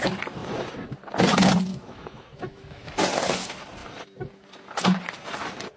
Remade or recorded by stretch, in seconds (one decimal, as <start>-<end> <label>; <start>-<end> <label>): 0.0-1.7 recorded; 1.7-3.0 remade; 3.0-5.8 recorded